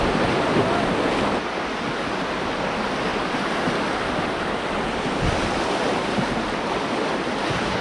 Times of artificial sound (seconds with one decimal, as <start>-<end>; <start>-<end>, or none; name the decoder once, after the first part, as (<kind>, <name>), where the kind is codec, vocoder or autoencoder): none